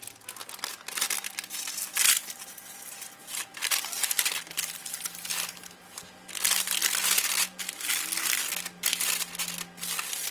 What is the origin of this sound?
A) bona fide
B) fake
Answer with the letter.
A